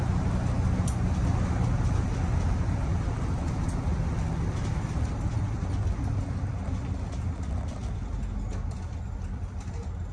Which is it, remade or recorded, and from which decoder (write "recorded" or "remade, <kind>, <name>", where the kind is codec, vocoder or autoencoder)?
recorded